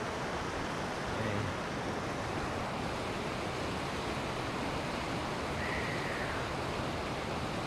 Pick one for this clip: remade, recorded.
recorded